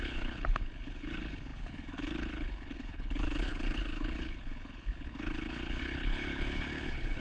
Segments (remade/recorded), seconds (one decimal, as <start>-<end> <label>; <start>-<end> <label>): 0.0-7.2 remade

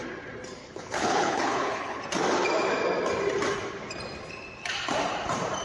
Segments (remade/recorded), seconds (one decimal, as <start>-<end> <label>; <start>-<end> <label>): 0.0-0.6 recorded; 0.6-2.0 remade; 2.0-5.6 recorded

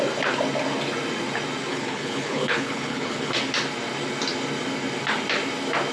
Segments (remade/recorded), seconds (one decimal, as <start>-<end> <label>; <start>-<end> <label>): 0.0-1.7 recorded; 1.7-3.4 remade; 3.4-5.9 recorded